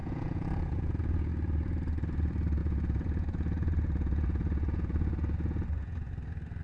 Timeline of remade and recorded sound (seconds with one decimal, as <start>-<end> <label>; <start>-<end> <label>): 0.0-1.3 remade; 1.3-2.6 recorded; 2.6-6.1 remade; 6.1-6.6 recorded